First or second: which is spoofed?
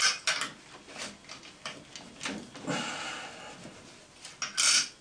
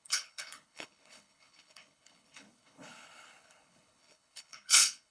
second